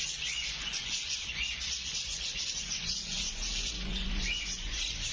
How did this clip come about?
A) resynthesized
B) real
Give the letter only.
A